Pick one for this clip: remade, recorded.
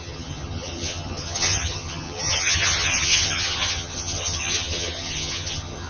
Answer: remade